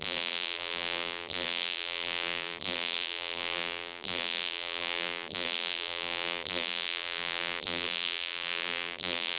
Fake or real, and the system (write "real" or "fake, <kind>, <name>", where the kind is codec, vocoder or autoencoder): fake, vocoder, BigVGAN v2